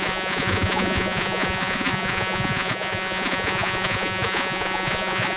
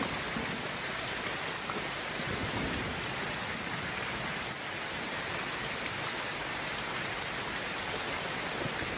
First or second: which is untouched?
second